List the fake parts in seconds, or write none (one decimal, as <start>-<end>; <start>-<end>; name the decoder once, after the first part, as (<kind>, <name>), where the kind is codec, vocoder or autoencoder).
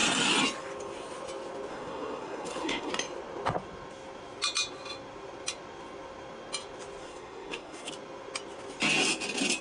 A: 1.7-2.9 (codec, SNAC); 7.0-7.9